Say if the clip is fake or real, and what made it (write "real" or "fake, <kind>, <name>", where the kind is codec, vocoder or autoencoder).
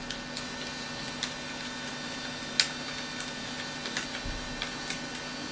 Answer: real